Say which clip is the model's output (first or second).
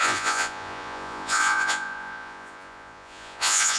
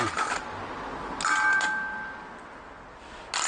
first